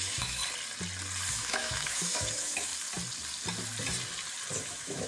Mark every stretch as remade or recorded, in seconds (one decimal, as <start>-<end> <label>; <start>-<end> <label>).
0.0-0.4 remade; 0.4-1.3 recorded; 1.3-2.7 remade; 2.7-4.6 recorded; 4.6-5.1 remade